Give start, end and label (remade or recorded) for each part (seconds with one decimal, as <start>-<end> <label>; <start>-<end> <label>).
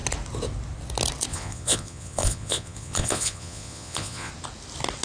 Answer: 0.0-1.3 recorded; 1.3-4.3 remade; 4.3-5.0 recorded